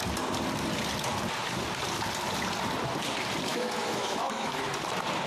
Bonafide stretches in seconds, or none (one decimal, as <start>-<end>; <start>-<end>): 0.0-3.5; 4.7-5.3